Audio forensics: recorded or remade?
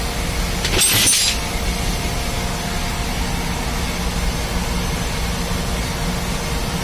recorded